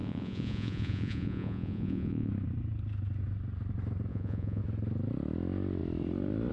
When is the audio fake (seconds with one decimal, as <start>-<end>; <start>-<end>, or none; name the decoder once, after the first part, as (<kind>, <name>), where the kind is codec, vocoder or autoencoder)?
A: 0.0-2.3 (vocoder, Vocos); 4.1-4.6